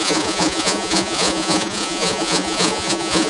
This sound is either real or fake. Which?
fake